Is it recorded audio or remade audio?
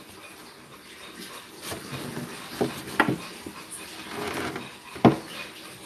recorded